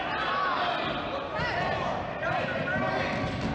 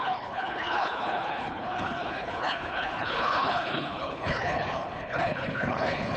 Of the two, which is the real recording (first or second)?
first